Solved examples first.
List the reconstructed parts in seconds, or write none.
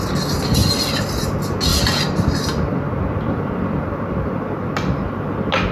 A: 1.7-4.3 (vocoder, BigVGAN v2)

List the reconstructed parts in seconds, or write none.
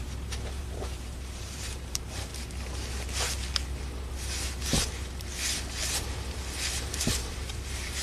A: 0.0-2.3 (vocoder, BigVGAN v2); 6.9-8.0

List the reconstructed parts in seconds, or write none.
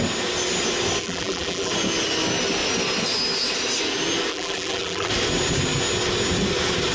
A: 1.0-1.7 (vocoder, BigVGAN v2); 4.3-5.1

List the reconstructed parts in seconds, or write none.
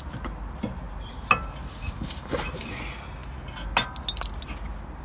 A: 1.8-2.7 (vocoder, BigVGAN v2)